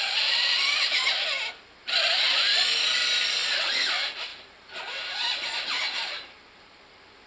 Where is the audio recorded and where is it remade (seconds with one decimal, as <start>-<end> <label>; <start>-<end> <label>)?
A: 0.0-3.4 remade; 3.4-3.9 recorded; 3.9-4.3 remade; 4.3-6.3 recorded; 6.3-7.3 remade